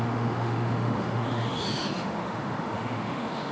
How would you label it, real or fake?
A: fake